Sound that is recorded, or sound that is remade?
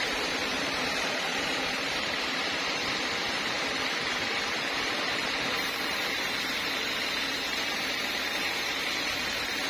remade